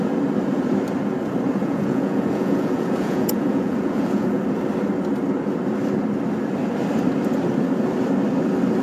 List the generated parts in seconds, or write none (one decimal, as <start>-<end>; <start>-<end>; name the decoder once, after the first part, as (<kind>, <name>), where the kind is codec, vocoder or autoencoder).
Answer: 1.6-4.4 (vocoder, Vocos)